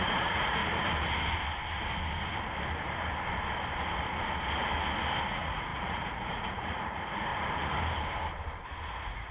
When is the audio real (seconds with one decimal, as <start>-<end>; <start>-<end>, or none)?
0.6-5.3; 7.3-8.9